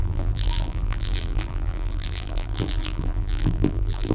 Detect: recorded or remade remade